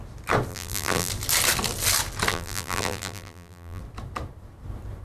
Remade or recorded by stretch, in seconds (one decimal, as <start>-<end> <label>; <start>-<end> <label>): 0.0-0.5 recorded; 0.5-1.1 remade; 1.1-2.3 recorded; 2.3-3.8 remade; 3.8-5.0 recorded